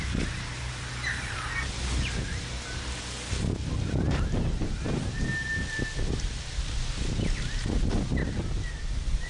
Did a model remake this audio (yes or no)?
no